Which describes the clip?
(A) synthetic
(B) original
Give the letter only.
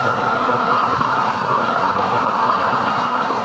A